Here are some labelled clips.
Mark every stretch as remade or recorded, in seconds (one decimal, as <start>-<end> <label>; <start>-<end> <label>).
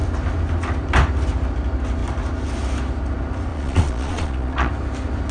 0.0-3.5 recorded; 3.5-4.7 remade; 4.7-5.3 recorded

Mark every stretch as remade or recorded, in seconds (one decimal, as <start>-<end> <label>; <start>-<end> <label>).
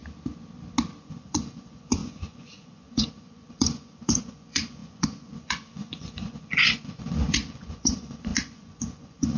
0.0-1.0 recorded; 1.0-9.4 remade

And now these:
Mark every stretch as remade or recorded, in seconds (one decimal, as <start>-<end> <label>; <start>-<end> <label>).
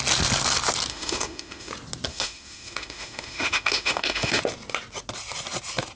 0.0-0.9 recorded; 0.9-1.7 remade; 1.7-2.1 recorded; 2.1-4.4 remade; 4.4-6.0 recorded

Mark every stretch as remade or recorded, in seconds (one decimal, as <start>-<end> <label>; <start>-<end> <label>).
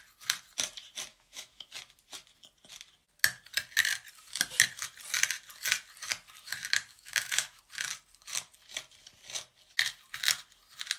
0.0-1.1 recorded; 1.1-1.7 remade; 1.7-6.9 recorded; 6.9-7.6 remade; 7.6-11.0 recorded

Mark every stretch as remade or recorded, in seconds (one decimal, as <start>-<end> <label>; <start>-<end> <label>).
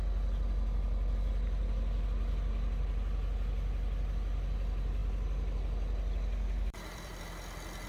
0.0-5.0 recorded; 5.0-7.2 remade; 7.2-7.9 recorded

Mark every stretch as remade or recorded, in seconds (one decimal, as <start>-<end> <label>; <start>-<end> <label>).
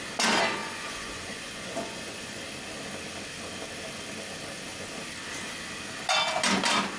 0.0-0.6 recorded; 0.6-2.4 remade; 2.4-7.0 recorded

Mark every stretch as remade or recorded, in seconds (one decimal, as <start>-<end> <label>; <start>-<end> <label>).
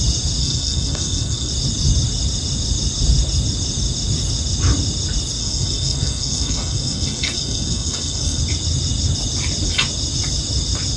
0.0-0.4 recorded; 0.4-1.5 remade; 1.5-5.4 recorded; 5.4-8.4 remade; 8.4-11.0 recorded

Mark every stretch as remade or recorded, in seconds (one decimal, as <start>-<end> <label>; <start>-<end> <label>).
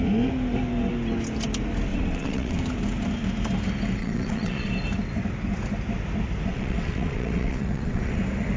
0.0-1.9 recorded; 1.9-2.6 remade; 2.6-4.0 recorded; 4.0-4.7 remade; 4.7-6.5 recorded; 6.5-8.2 remade; 8.2-8.6 recorded